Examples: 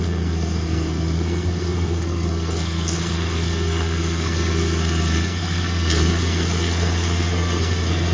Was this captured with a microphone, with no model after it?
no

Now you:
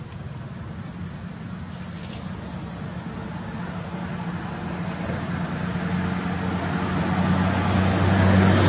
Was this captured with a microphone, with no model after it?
yes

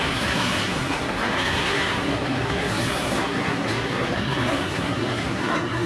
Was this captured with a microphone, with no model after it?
no